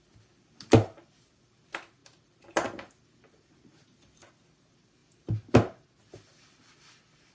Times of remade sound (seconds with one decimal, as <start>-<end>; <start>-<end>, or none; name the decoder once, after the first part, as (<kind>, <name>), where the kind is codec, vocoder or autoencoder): 2.0-4.3 (vocoder, BigVGAN v2)